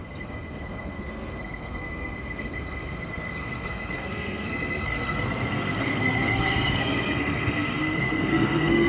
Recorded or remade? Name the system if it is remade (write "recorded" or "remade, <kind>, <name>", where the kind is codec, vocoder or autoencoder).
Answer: remade, codec, SNAC